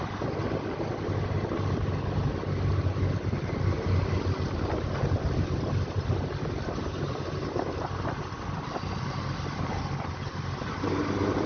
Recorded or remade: recorded